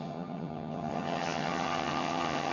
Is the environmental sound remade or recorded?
remade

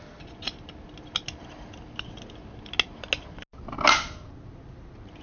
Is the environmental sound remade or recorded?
recorded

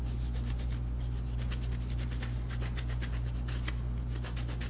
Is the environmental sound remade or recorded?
recorded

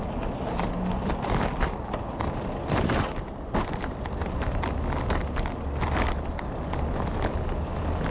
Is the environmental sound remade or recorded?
recorded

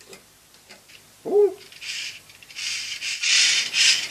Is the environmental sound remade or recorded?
remade